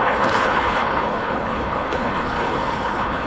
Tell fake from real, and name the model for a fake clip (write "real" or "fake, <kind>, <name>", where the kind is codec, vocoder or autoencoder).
fake, codec, HILCodec